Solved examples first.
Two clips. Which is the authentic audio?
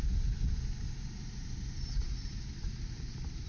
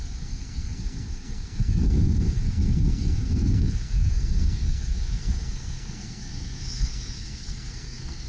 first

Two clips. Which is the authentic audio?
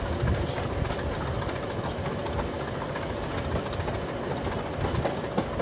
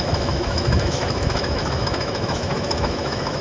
first